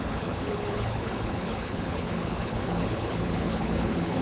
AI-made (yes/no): yes